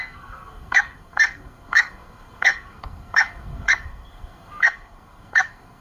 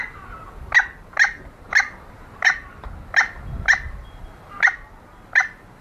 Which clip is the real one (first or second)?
second